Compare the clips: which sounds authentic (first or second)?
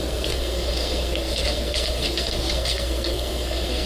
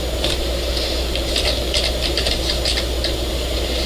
second